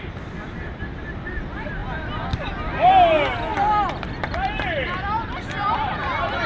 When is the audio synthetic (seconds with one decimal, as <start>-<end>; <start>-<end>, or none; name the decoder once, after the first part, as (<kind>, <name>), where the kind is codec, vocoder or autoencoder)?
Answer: none